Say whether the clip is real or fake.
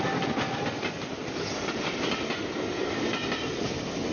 real